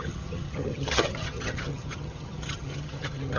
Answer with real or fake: fake